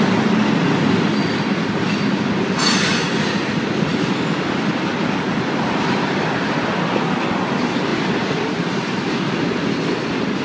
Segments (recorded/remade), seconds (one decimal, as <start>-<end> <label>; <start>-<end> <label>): 0.0-10.4 recorded